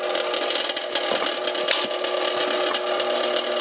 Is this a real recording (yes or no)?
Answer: yes